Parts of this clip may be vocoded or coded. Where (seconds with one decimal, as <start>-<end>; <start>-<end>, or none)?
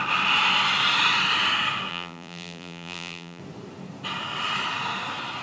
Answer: 1.9-3.4